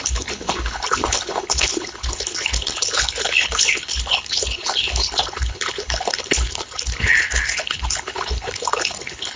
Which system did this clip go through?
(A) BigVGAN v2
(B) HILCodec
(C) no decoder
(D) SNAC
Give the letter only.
B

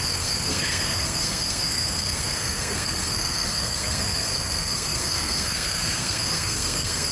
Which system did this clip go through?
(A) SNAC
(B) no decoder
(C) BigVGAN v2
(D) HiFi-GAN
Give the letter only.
A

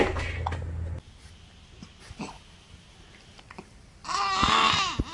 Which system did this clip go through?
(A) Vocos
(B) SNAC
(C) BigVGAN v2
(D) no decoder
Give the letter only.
D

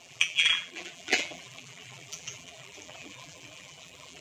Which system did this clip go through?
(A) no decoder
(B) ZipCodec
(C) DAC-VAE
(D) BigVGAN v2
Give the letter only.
D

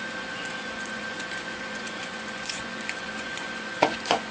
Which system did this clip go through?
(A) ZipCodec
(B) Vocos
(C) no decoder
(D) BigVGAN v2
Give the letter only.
B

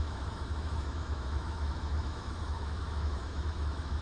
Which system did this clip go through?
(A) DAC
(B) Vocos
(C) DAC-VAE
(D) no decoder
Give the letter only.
C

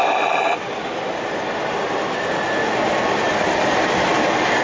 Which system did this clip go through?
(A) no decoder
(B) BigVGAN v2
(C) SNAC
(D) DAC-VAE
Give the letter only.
A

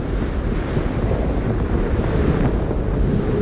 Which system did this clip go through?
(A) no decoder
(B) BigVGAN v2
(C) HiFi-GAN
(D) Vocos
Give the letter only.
A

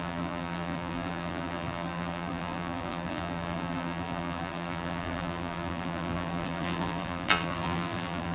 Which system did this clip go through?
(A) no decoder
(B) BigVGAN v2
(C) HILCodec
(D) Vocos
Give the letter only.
B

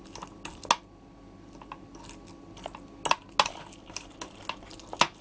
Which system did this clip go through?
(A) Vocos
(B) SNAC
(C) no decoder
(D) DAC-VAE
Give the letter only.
C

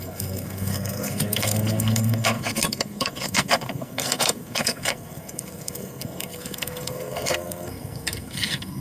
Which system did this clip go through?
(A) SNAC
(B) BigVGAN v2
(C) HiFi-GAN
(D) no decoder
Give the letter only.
A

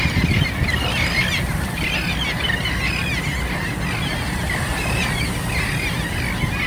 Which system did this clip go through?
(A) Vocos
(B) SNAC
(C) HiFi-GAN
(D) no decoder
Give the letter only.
D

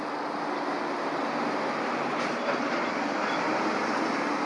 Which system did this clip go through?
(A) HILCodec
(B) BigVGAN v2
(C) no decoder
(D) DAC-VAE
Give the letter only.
C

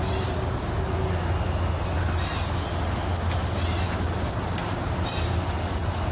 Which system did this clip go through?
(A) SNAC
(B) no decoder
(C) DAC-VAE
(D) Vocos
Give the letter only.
B